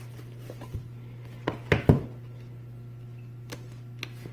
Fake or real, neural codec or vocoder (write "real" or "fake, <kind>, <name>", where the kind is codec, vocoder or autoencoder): real